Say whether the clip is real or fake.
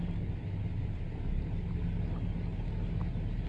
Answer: real